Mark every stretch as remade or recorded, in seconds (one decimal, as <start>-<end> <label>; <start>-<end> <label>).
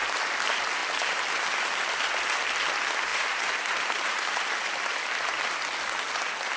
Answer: 0.0-3.1 recorded; 3.1-4.9 remade; 4.9-6.6 recorded